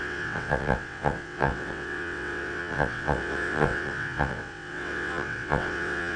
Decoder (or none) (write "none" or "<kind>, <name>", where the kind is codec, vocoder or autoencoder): vocoder, WaveNeXt